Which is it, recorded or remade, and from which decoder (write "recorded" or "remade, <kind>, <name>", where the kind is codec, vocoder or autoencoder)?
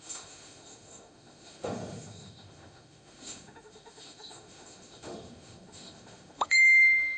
remade, autoencoder, DAC-VAE